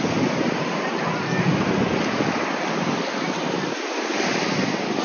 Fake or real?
real